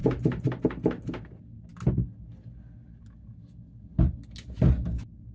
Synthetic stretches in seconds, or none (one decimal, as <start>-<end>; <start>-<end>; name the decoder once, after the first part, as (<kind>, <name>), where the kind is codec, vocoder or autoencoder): none